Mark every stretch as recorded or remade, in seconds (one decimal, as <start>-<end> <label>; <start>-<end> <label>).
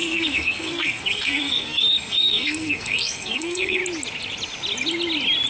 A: 0.0-3.8 remade; 3.8-5.5 recorded